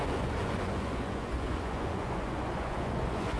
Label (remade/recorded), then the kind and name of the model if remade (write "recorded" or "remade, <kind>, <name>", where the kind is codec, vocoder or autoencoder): remade, vocoder, Vocos